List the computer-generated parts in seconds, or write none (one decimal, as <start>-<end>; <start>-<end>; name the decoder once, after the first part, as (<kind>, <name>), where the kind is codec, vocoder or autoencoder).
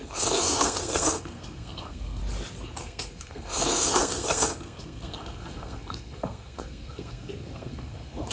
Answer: 0.0-2.2 (codec, SNAC); 2.8-8.3